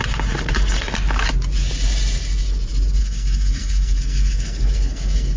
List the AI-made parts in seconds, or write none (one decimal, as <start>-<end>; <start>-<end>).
3.0-5.4